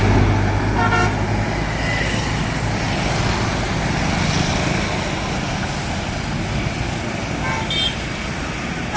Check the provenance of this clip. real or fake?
real